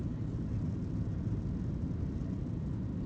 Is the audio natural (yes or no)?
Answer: yes